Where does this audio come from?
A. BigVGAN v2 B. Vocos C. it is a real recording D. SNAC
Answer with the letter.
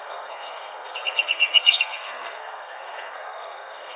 D